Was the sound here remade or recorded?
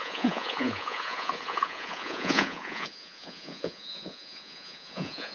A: remade